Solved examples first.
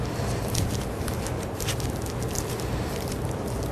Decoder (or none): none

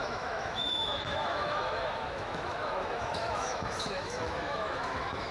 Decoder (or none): autoencoder, DAC-VAE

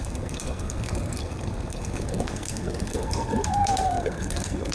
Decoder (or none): codec, SNAC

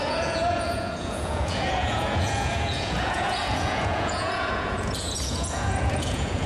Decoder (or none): vocoder, Vocos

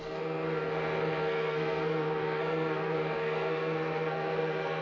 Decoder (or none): codec, SNAC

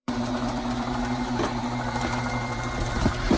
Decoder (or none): vocoder, BigVGAN v2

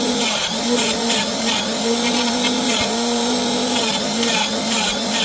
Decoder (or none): vocoder, BigVGAN v2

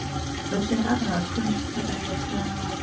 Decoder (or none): vocoder, BigVGAN v2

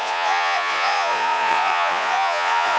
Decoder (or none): vocoder, Vocos